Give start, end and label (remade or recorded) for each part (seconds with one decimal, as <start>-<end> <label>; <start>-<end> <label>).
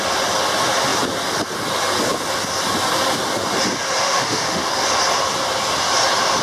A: 0.0-4.0 recorded; 4.0-4.7 remade; 4.7-6.4 recorded